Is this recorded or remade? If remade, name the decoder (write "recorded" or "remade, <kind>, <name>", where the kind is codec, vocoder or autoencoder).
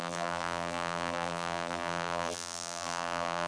remade, vocoder, BigVGAN v2